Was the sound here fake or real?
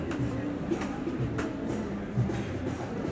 fake